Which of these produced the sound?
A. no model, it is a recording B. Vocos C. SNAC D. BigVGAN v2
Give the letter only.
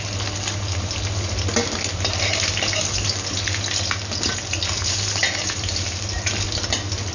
A